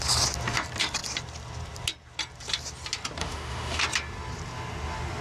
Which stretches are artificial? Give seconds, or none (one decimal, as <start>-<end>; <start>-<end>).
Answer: 3.2-3.8